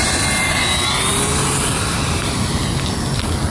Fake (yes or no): no